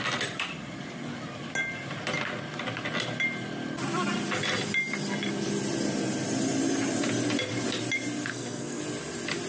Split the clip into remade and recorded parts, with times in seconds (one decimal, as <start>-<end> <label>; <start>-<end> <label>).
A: 0.0-8.3 recorded; 8.3-8.8 remade; 8.8-9.5 recorded